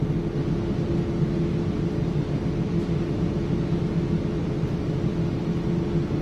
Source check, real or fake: real